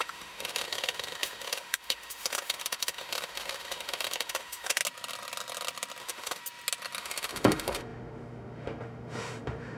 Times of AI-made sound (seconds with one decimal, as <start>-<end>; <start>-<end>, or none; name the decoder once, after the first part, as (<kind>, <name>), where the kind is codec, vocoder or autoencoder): 0.0-4.8 (autoencoder, DAC-VAE); 6.0-6.4; 7.0-9.8